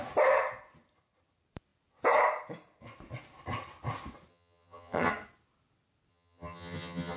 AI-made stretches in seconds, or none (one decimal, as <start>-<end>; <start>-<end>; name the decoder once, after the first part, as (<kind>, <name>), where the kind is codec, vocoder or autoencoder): 4.3-5.1 (vocoder, HiFi-GAN); 6.1-7.2